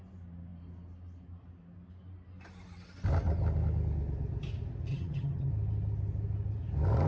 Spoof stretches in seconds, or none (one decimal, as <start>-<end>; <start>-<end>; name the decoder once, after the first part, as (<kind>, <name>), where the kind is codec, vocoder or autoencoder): 4.9-5.5 (vocoder, HiFi-GAN)